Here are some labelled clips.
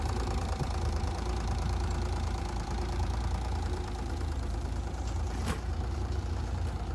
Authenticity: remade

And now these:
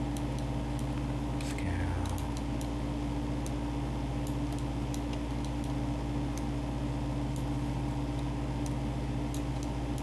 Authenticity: recorded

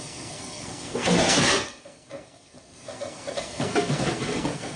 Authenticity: remade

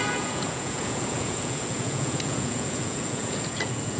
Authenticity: remade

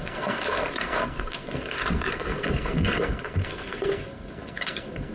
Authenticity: remade